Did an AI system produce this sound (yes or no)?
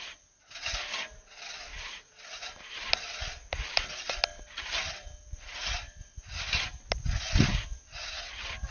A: no